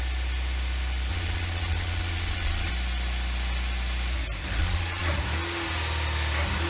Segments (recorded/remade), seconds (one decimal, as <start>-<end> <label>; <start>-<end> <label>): 0.0-1.1 recorded; 1.1-2.7 remade; 2.7-4.6 recorded; 4.6-5.1 remade; 5.1-6.7 recorded